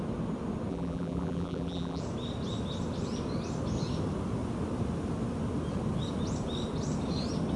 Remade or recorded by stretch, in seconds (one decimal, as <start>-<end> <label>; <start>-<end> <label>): 0.0-0.7 recorded; 0.7-2.0 remade; 2.0-7.6 recorded